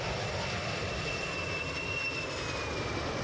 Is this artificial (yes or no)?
no